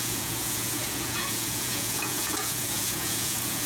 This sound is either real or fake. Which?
fake